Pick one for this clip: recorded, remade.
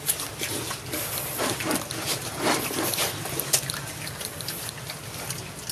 remade